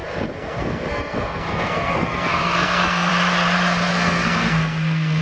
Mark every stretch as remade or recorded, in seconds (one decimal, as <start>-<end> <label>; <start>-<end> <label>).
0.0-3.1 remade; 3.1-3.9 recorded; 3.9-5.2 remade